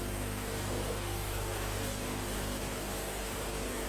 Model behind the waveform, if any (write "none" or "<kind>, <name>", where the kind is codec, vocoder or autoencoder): codec, DAC